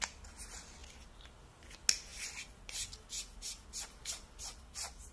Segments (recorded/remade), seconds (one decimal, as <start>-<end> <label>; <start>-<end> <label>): 0.0-5.1 recorded